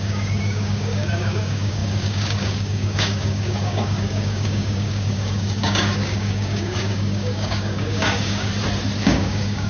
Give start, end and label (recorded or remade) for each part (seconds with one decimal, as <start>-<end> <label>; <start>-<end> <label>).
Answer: 0.0-8.5 remade; 8.5-9.0 recorded; 9.0-9.7 remade